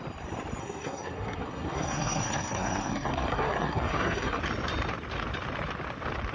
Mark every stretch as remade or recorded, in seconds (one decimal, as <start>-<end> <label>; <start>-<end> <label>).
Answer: 0.0-0.6 recorded; 0.6-4.4 remade; 4.4-6.3 recorded